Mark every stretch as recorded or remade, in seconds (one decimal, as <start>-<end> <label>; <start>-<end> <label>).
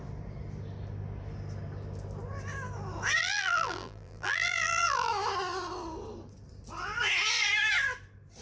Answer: 0.0-3.2 recorded; 3.2-5.1 remade; 5.1-8.4 recorded